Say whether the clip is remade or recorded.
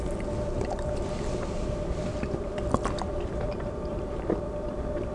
remade